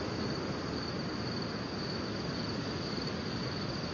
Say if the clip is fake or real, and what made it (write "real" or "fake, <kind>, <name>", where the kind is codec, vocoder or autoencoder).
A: real